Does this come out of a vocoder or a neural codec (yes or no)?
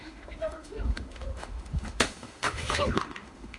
yes